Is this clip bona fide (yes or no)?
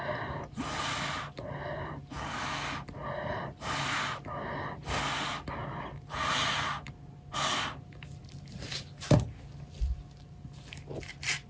yes